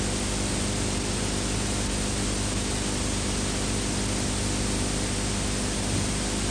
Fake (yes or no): no